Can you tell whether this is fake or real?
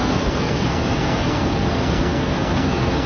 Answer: fake